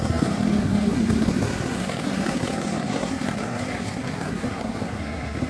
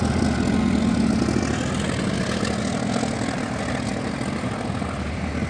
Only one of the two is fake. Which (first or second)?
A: first